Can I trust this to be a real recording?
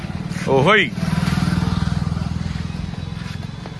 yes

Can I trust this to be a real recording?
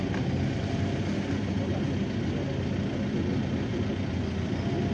yes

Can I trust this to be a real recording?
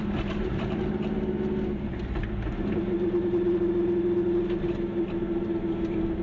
yes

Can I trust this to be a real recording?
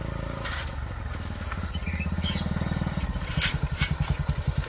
no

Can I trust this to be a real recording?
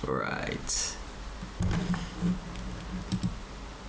yes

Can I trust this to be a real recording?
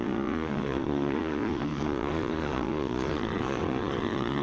no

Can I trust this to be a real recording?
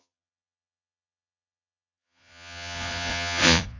no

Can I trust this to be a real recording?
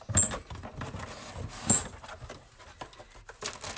yes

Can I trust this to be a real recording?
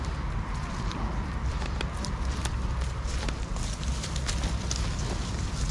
yes